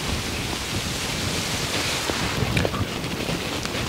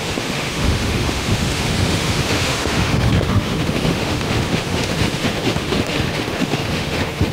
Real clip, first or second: first